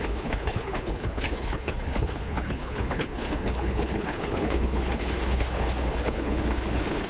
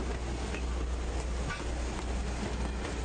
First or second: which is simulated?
first